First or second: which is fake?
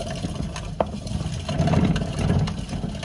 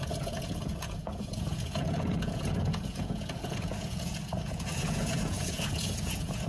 second